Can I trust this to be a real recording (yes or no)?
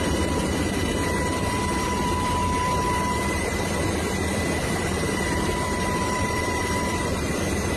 no